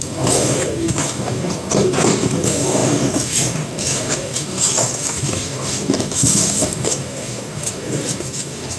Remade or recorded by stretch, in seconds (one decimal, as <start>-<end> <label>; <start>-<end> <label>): 0.0-8.8 remade